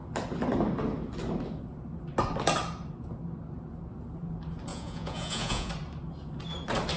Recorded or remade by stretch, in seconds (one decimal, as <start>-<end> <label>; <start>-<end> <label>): 0.0-4.7 recorded; 4.7-5.7 remade; 5.7-7.0 recorded